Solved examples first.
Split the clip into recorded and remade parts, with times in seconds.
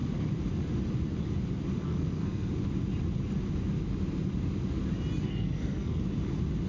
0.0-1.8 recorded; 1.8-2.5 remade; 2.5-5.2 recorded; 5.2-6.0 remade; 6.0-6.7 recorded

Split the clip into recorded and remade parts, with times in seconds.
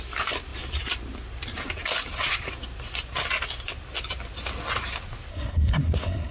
0.0-5.3 recorded; 5.3-6.3 remade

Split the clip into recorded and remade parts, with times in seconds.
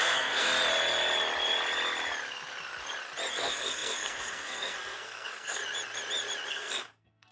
0.0-0.5 remade; 0.5-3.3 recorded; 3.3-5.6 remade; 5.6-6.5 recorded; 6.5-7.3 remade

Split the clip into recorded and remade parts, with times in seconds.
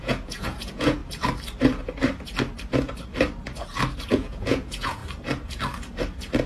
0.0-1.0 remade; 1.0-4.1 recorded; 4.1-5.0 remade; 5.0-6.5 recorded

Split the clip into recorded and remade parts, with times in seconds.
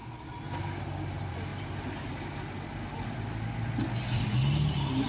0.0-0.8 recorded; 0.8-1.5 remade; 1.5-4.6 recorded; 4.6-5.1 remade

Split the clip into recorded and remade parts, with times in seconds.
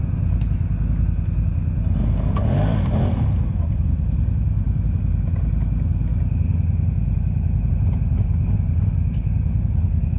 0.0-10.2 recorded